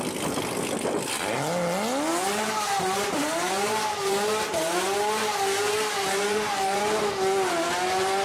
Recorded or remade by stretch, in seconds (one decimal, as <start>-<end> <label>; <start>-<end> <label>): 0.0-2.1 recorded; 2.1-6.8 remade; 6.8-8.2 recorded